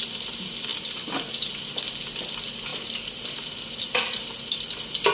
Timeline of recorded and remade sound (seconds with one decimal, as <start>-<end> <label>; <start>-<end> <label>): 0.0-5.1 recorded